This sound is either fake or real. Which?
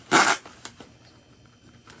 fake